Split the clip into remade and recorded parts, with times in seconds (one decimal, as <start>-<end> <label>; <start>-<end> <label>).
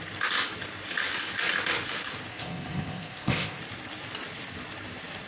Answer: 0.0-2.3 recorded; 2.3-3.6 remade; 3.6-5.3 recorded